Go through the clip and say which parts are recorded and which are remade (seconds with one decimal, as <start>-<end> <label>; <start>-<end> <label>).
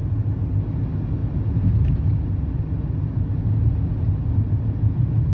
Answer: 0.0-5.3 recorded